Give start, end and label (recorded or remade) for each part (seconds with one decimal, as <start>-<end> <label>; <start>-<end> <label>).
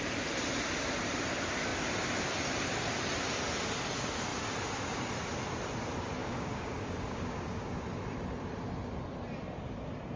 0.0-6.2 recorded; 6.2-7.8 remade; 7.8-10.2 recorded